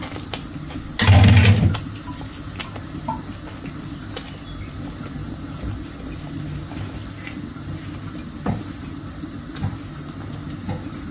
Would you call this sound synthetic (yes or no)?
no